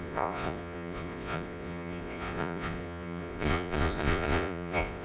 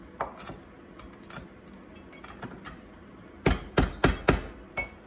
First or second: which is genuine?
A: second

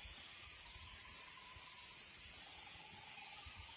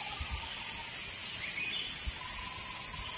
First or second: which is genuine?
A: second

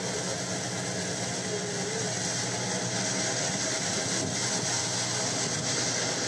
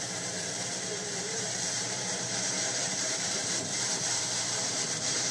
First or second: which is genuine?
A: first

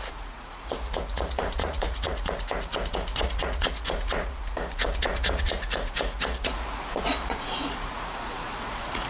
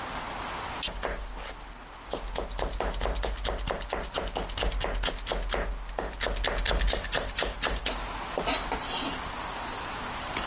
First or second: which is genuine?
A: second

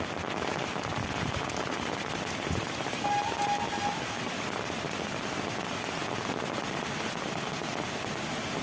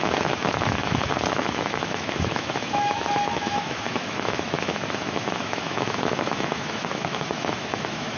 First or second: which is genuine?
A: first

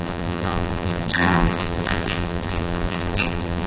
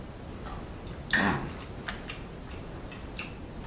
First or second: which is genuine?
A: second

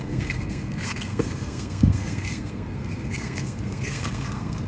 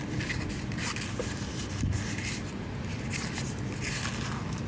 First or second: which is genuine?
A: second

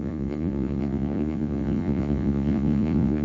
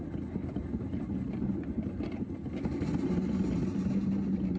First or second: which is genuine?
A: second